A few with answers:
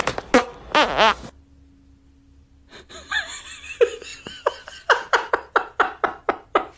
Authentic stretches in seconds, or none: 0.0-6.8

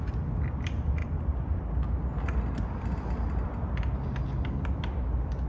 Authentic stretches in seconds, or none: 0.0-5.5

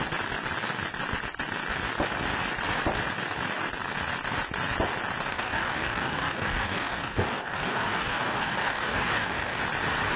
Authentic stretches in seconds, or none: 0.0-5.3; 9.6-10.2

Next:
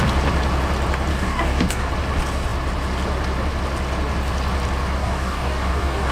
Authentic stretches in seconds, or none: 0.0-1.1; 1.9-5.0

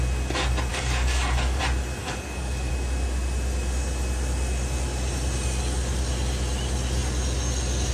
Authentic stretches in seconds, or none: 0.0-0.7; 1.6-2.0; 2.7-7.9

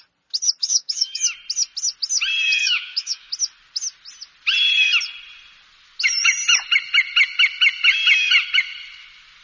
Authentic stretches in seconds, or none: 0.0-0.6; 1.2-2.6; 3.3-9.4